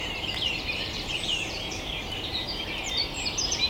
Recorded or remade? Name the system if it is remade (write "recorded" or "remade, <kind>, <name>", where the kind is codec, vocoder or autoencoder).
remade, vocoder, BigVGAN v2